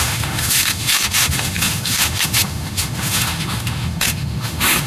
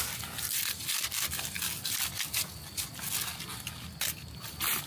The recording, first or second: second